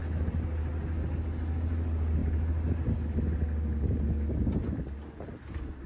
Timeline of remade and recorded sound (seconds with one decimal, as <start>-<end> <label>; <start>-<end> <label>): 0.0-5.9 recorded